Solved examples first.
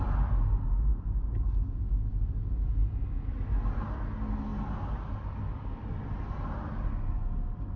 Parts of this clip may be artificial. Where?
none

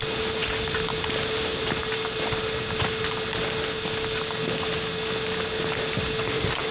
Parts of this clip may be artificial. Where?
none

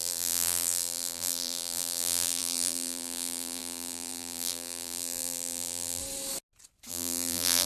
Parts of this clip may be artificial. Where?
0.0-6.0 (vocoder, BigVGAN v2); 6.9-7.7

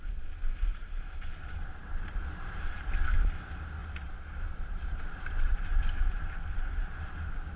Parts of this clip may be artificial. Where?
0.7-1.3 (vocoder, BigVGAN v2); 1.8-2.9; 3.8-7.6

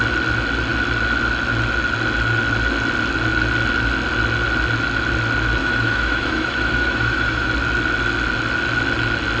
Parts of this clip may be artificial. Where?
5.6-7.5 (autoencoder, DAC-VAE)

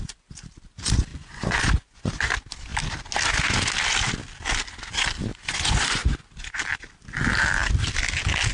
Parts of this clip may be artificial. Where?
1.1-2.3 (vocoder, Vocos); 5.3-6.3

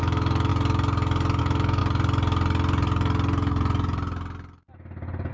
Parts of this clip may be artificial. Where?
0.0-0.5 (autoencoder, DAC-VAE); 1.4-1.8